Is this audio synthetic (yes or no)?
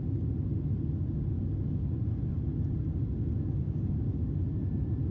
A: no